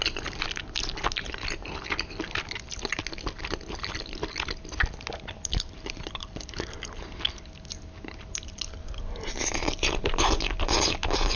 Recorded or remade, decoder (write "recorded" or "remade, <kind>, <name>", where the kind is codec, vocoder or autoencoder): recorded